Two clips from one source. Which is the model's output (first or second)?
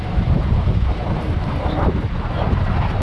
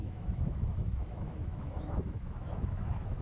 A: second